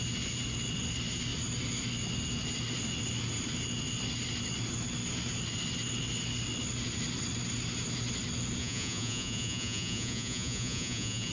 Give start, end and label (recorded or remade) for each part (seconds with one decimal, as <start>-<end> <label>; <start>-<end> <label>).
0.0-8.6 recorded; 8.6-11.3 remade